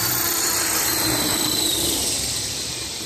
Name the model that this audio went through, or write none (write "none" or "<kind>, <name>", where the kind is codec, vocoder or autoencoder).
vocoder, BigVGAN v2